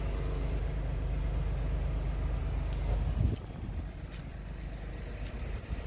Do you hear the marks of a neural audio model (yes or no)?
no